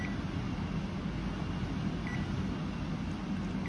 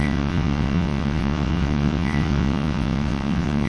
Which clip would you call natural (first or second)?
first